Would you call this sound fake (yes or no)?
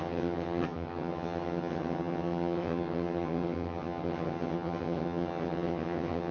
yes